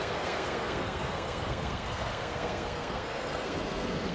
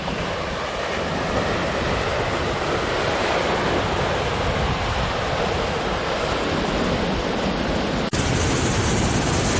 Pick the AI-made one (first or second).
first